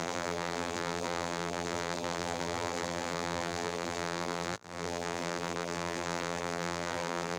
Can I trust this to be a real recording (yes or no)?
no